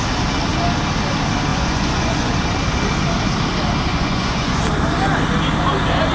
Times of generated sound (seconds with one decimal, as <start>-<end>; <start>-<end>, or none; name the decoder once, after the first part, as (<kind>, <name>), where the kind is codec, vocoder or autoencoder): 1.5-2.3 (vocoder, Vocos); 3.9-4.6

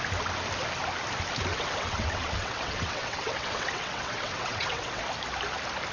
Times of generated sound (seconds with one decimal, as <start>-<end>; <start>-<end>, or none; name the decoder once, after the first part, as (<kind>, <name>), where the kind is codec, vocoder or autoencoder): 1.5-5.0 (vocoder, WaveNeXt)

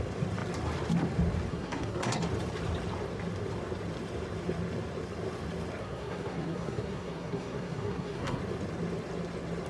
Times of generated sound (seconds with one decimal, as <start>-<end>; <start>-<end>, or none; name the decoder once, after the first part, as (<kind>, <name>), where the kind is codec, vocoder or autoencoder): 1.5-2.2 (codec, SNAC); 5.8-8.4